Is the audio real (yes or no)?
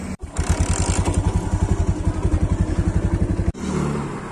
yes